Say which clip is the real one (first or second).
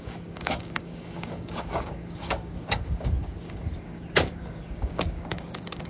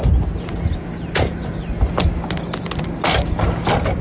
second